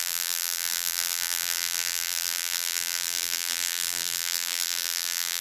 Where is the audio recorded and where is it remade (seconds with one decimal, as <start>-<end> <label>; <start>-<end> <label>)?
0.0-5.4 remade